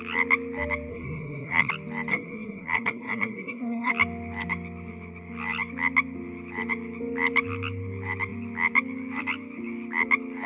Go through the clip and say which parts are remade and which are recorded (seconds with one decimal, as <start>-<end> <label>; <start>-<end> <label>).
0.0-0.9 recorded; 0.9-1.7 remade; 1.7-2.1 recorded; 2.1-3.9 remade; 3.9-10.5 recorded